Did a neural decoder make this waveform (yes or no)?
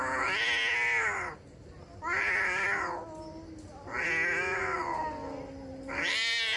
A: no